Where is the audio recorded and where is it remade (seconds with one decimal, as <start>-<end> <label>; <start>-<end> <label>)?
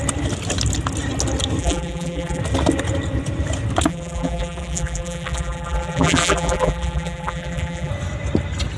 0.0-1.6 recorded; 1.6-2.4 remade; 2.4-3.9 recorded; 3.9-7.9 remade; 7.9-8.8 recorded